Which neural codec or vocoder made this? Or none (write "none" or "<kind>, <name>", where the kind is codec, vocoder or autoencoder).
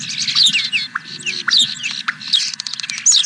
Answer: none